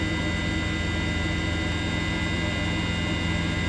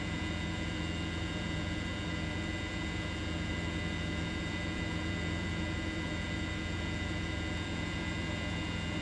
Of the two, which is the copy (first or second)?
second